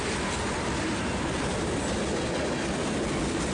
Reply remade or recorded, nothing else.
recorded